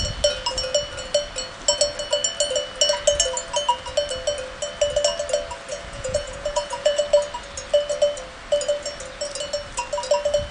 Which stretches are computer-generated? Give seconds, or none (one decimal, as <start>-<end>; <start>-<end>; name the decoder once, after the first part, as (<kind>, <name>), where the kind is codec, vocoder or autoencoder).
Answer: 5.7-7.0 (vocoder, Vocos)